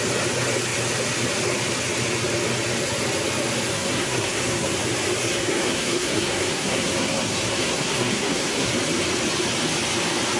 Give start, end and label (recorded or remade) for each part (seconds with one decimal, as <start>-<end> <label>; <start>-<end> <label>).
0.0-3.7 recorded; 3.7-4.7 remade; 4.7-5.2 recorded; 5.2-8.7 remade; 8.7-10.4 recorded